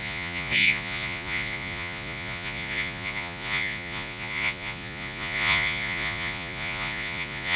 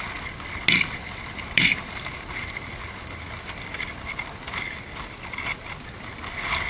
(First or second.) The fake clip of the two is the first